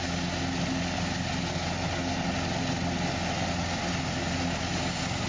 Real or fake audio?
real